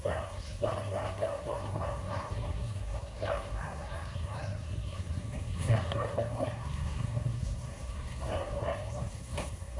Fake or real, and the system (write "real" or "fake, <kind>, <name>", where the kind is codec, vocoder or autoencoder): fake, codec, SNAC